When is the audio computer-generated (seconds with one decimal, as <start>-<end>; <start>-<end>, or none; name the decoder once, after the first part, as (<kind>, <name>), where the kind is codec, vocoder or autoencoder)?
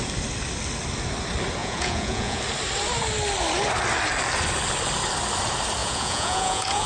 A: 1.6-2.4 (vocoder, Vocos); 5.8-6.9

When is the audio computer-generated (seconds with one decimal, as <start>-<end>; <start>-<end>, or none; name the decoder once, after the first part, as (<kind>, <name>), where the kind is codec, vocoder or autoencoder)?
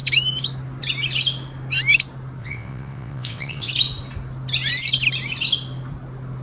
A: 2.4-3.7 (vocoder, WaveNeXt)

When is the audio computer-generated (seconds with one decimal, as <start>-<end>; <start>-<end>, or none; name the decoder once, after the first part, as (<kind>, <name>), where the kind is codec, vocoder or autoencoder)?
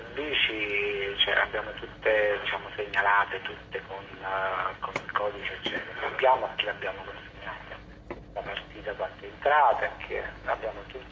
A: 5.4-6.1 (autoencoder, DAC-VAE); 10.0-10.5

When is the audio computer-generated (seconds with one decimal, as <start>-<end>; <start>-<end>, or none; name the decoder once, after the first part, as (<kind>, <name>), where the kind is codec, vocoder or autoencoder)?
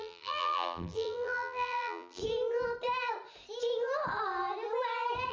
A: 0.0-2.2 (vocoder, BigVGAN v2)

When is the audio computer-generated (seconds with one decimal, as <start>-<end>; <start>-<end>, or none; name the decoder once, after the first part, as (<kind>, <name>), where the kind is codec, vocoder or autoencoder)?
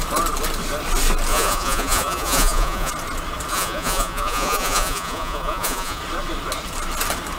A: 1.3-2.9 (vocoder, Vocos); 3.5-6.0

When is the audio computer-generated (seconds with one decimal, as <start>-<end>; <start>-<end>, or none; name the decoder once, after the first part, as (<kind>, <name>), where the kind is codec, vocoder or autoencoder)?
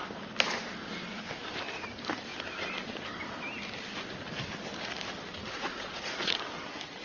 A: 5.4-6.4 (vocoder, Vocos)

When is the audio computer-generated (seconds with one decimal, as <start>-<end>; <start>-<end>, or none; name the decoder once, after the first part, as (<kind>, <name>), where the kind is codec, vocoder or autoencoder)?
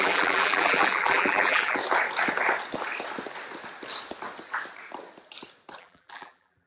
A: 0.0-1.8 (vocoder, BigVGAN v2); 5.8-6.7